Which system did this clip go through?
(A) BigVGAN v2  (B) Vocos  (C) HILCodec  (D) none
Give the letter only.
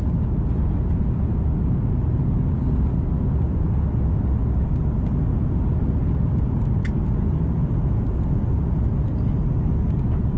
D